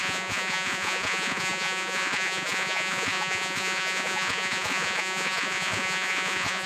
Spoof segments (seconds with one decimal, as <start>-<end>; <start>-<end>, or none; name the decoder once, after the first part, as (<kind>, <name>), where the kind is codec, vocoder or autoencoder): 0.0-6.7 (vocoder, Vocos)